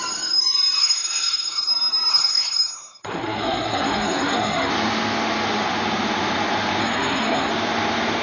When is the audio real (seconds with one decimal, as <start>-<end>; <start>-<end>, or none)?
0.0-0.8; 1.7-2.1; 4.7-6.8; 7.5-8.2

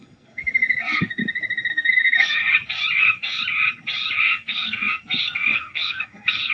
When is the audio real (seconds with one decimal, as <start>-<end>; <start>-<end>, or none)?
1.2-1.7; 2.4-3.0; 3.4-4.2

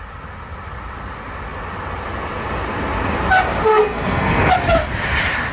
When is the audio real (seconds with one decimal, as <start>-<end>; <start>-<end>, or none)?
0.0-3.7; 4.5-5.5

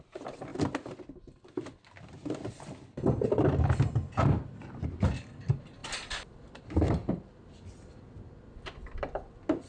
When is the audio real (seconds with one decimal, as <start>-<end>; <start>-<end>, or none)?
0.0-9.7

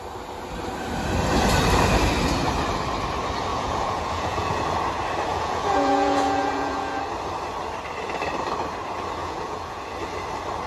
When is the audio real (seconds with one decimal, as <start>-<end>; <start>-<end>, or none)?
0.0-3.5; 4.6-5.3; 7.0-9.2; 9.8-10.7

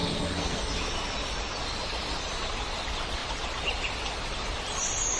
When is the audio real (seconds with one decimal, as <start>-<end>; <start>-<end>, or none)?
0.7-5.2

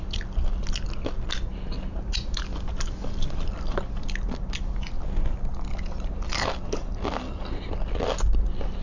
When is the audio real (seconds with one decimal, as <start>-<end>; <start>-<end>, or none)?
0.0-8.8